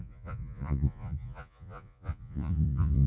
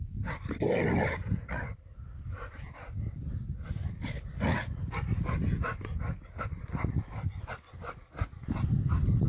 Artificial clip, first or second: first